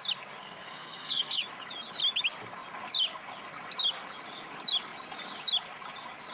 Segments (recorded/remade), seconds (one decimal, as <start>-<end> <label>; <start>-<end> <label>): 0.0-0.4 recorded; 0.4-1.4 remade; 1.4-6.3 recorded

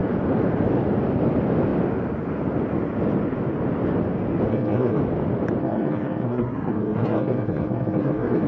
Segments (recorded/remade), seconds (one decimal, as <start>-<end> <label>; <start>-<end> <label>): 0.0-4.5 recorded; 4.5-5.0 remade; 5.0-5.6 recorded; 5.6-8.5 remade

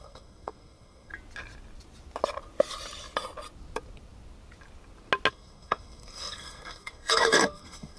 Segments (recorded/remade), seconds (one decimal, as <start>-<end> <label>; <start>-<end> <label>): 0.0-1.1 remade; 1.1-5.3 recorded; 5.3-8.0 remade

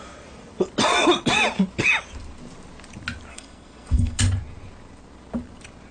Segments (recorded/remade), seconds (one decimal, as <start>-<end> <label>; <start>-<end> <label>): 0.0-3.3 recorded; 3.3-4.2 remade; 4.2-5.9 recorded

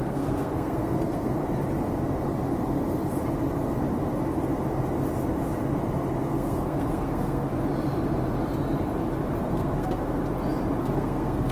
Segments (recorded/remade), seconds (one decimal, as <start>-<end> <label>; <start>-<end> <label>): 0.0-1.4 remade; 1.4-6.2 recorded; 6.2-7.5 remade; 7.5-9.4 recorded; 9.4-10.2 remade; 10.2-10.8 recorded; 10.8-11.5 remade

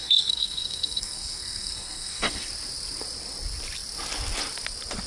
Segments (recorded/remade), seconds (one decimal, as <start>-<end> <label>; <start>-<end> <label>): 0.0-2.5 remade; 2.5-5.1 recorded